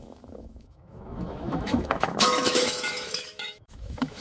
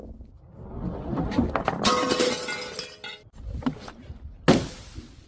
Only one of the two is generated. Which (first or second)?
first